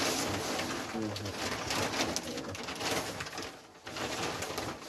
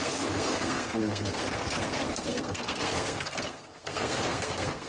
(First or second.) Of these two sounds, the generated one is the second